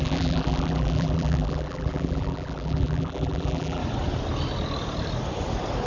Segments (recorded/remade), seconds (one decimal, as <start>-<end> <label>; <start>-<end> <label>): 0.0-3.8 remade; 3.8-5.9 recorded